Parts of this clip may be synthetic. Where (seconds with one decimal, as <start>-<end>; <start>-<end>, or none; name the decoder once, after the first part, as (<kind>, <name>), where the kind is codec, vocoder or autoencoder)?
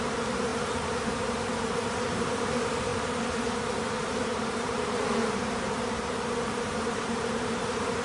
0.0-2.9 (vocoder, BigVGAN v2); 3.8-8.0